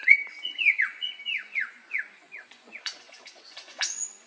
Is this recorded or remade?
remade